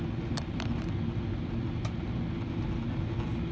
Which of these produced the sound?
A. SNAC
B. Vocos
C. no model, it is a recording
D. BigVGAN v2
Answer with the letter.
C